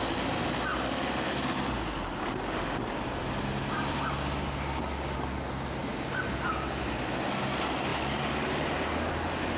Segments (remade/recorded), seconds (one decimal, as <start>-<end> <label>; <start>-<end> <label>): 0.0-9.6 recorded